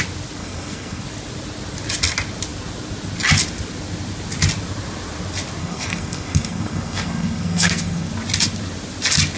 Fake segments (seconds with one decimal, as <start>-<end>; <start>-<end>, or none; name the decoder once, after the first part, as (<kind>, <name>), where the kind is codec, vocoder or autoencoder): 0.4-1.0 (codec, SNAC); 5.6-8.1